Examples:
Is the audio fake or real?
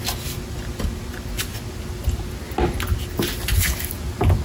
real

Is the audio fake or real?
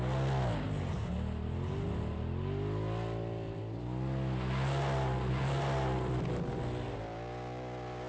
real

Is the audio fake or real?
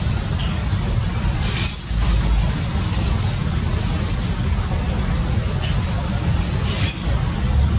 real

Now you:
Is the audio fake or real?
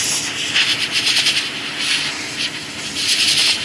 real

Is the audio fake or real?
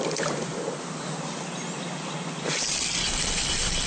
real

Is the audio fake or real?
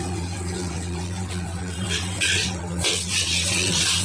fake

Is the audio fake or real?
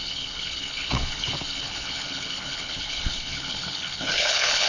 fake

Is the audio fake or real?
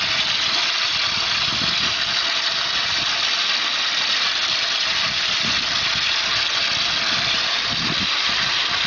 real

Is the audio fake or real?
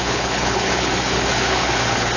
fake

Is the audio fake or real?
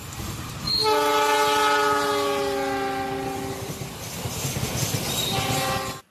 real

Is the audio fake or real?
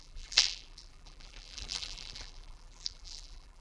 fake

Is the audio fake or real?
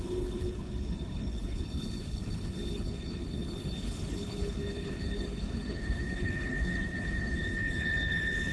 fake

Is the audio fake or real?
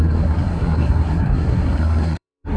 fake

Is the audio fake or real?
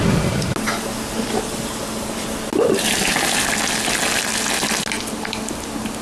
real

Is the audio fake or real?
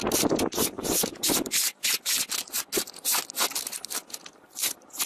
real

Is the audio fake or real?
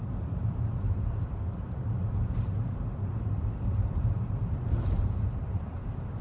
fake